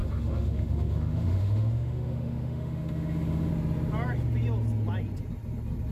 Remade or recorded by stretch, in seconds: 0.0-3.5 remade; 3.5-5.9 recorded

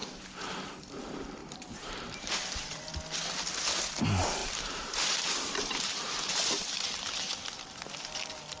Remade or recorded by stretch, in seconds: 0.0-0.6 remade; 0.6-1.4 recorded; 1.4-2.9 remade; 2.9-4.4 recorded; 4.4-6.9 remade; 6.9-8.6 recorded

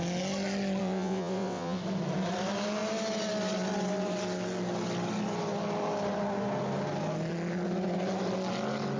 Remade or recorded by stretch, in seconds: 0.0-0.8 recorded; 0.8-1.8 remade; 1.8-9.0 recorded

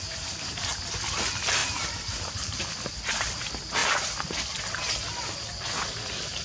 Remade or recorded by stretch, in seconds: 0.0-0.7 remade; 0.7-1.6 recorded; 1.6-2.6 remade; 2.6-6.4 recorded

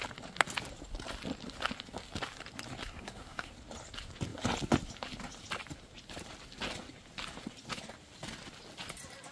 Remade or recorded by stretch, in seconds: 0.0-2.8 recorded; 2.8-3.5 remade; 3.5-9.3 recorded

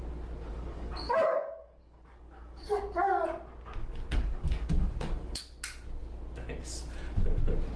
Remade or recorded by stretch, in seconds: 0.0-0.5 recorded; 0.5-2.8 remade; 2.8-3.8 recorded; 3.8-5.4 remade; 5.4-7.8 recorded

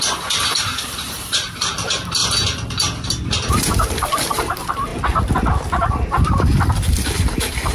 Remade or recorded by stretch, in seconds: 0.0-2.2 remade; 2.2-3.5 recorded; 3.5-4.9 remade; 4.9-6.9 recorded; 6.9-7.7 remade